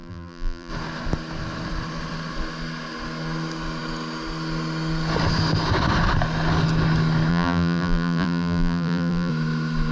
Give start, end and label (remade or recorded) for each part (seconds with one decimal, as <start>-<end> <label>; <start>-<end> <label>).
0.0-0.7 remade; 0.7-7.3 recorded; 7.3-9.3 remade; 9.3-9.9 recorded